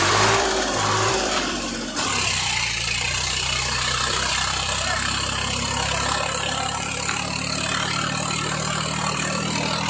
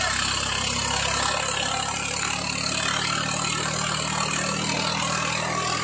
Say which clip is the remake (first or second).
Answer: first